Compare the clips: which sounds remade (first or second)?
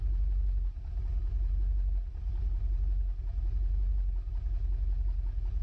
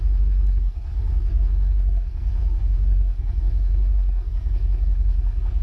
second